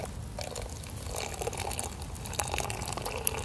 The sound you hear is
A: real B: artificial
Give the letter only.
A